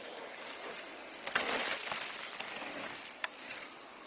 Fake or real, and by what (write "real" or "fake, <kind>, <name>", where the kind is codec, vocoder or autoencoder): real